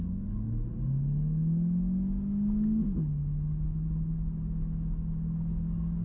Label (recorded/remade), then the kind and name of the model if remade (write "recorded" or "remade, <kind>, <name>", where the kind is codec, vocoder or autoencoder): recorded